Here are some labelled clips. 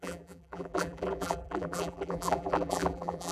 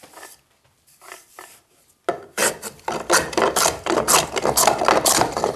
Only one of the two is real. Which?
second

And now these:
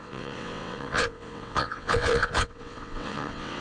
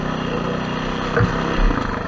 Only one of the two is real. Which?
second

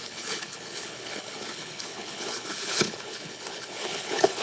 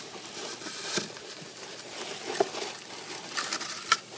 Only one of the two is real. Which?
second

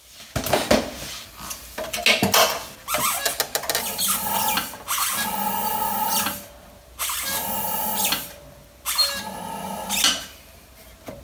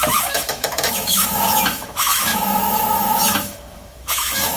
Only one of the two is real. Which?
first